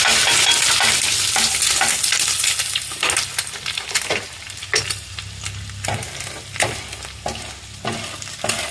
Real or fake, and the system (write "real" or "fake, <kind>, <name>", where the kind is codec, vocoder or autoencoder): real